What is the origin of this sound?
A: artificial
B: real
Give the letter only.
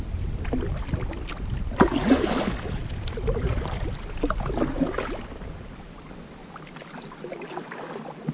B